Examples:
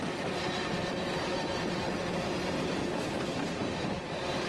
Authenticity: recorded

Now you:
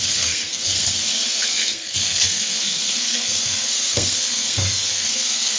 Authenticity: remade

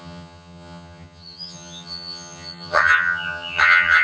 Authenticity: remade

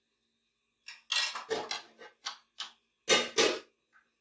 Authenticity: recorded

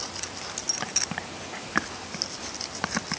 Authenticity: recorded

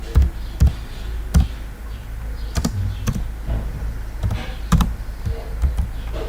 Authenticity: recorded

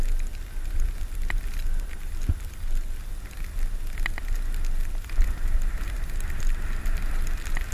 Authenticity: recorded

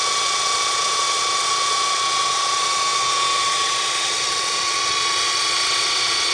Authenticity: remade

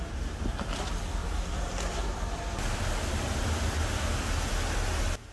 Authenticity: recorded